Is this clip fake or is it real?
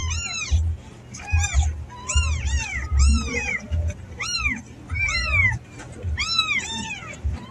real